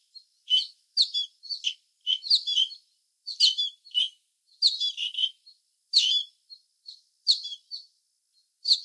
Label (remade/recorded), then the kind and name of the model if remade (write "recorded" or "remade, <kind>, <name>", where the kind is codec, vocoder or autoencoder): recorded